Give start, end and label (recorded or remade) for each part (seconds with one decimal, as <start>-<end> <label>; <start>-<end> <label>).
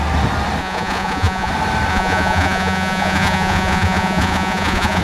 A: 0.0-0.6 recorded; 0.6-1.5 remade; 1.5-1.9 recorded; 1.9-5.0 remade